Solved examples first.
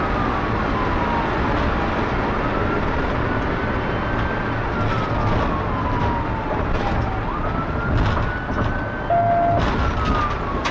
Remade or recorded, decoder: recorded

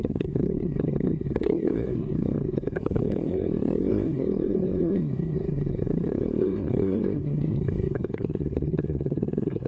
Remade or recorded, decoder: remade, codec, SNAC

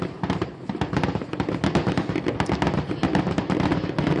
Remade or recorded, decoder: recorded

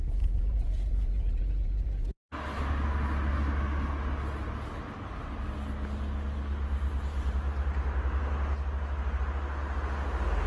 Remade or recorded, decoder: recorded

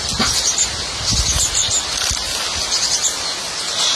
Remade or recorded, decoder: recorded